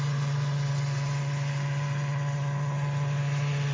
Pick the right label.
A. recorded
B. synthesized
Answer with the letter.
A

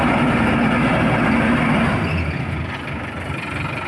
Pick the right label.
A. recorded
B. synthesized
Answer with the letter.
A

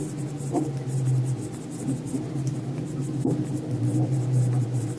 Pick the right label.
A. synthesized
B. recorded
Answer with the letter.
B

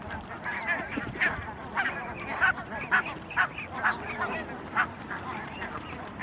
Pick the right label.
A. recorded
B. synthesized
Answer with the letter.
A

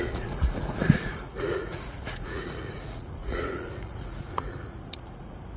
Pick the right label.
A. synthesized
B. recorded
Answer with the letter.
A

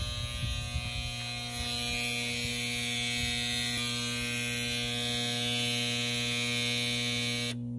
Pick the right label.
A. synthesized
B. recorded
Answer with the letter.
B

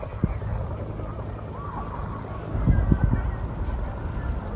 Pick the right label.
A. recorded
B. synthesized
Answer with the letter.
A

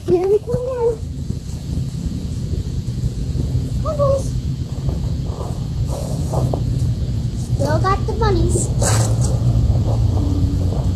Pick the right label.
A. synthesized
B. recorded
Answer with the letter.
A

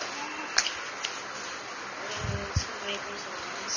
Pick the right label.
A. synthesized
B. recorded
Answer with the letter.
B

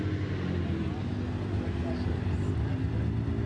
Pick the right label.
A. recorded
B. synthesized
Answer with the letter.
A